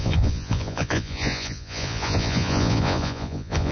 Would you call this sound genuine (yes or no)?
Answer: no